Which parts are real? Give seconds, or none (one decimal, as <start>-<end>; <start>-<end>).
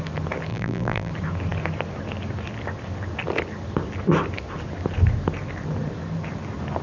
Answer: 0.0-0.5; 1.1-6.8